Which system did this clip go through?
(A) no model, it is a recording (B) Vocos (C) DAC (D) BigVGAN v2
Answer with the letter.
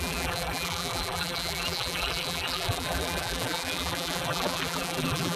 D